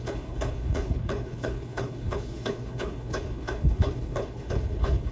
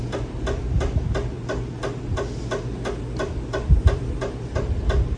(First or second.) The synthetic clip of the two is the first